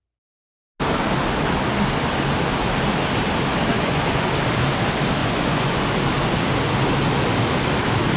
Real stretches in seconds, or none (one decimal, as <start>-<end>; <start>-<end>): 0.0-3.7; 4.3-5.2; 5.8-8.2